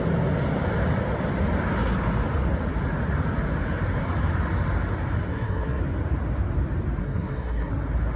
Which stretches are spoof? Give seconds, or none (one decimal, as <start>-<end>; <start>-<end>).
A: 5.3-5.8; 7.0-7.7